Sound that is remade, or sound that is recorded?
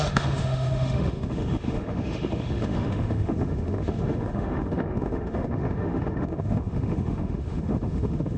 remade